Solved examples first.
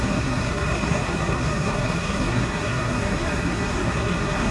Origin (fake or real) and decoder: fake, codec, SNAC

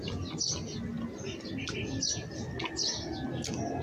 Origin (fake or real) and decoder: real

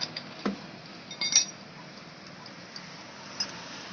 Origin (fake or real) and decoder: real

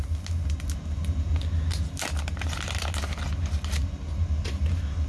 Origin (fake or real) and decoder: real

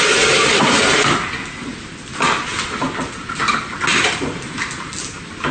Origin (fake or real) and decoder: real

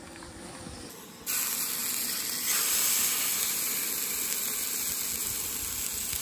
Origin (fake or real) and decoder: real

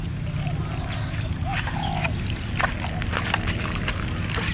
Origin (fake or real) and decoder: real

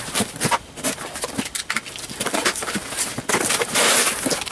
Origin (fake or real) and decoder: real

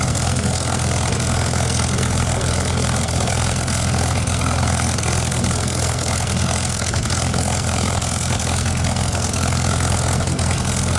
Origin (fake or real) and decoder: fake, codec, SNAC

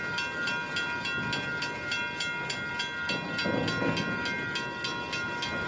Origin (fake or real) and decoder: real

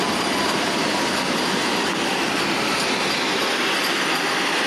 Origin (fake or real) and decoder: real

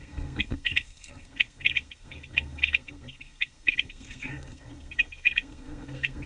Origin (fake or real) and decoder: fake, codec, SNAC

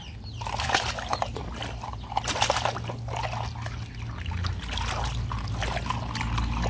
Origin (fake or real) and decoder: real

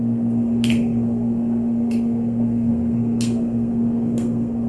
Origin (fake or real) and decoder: fake, codec, SNAC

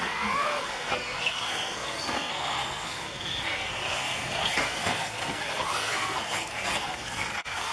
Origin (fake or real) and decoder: fake, codec, SNAC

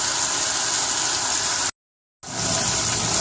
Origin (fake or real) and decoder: real